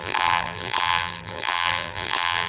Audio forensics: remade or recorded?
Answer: remade